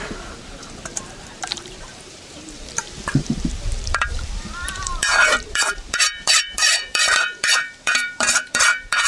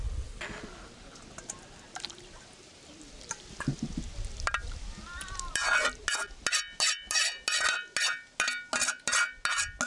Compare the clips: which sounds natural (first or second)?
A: second